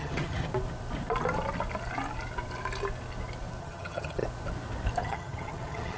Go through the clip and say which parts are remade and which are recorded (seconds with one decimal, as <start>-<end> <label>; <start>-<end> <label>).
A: 0.0-0.5 remade; 0.5-3.6 recorded; 3.6-4.2 remade; 4.2-5.0 recorded; 5.0-6.0 remade